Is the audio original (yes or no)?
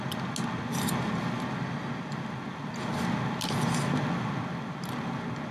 yes